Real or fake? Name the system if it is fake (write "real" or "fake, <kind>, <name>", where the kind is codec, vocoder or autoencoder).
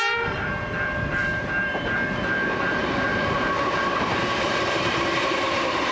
fake, vocoder, BigVGAN v2